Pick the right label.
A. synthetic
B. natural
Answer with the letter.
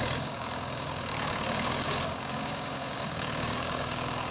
A